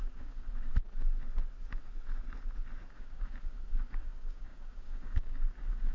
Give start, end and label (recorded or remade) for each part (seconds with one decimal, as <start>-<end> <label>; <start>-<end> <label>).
0.0-0.7 remade; 0.7-2.9 recorded; 2.9-5.9 remade

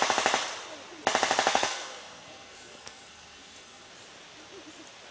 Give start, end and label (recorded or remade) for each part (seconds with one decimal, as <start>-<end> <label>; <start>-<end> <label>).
0.0-1.5 recorded; 1.5-3.9 remade; 3.9-5.1 recorded

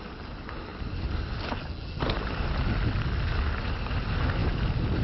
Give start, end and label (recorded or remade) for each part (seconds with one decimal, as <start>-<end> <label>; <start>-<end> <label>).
0.0-5.0 recorded

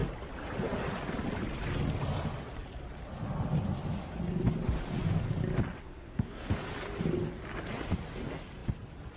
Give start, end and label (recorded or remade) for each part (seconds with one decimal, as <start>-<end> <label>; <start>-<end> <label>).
0.0-5.8 recorded; 5.8-6.5 remade; 6.5-9.2 recorded

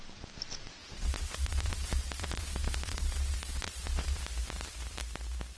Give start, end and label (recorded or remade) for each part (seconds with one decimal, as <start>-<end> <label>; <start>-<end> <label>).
0.0-0.8 recorded; 0.8-4.2 remade; 4.2-5.6 recorded

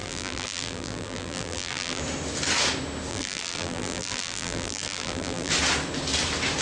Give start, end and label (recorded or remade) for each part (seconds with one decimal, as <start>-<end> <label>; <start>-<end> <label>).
0.0-2.0 remade; 2.0-3.1 recorded; 3.1-5.5 remade; 5.5-6.6 recorded

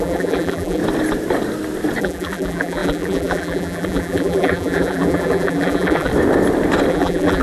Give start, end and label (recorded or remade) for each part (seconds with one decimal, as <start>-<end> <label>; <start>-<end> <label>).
0.0-0.8 remade; 0.8-2.0 recorded; 2.0-6.1 remade; 6.1-6.9 recorded; 6.9-7.4 remade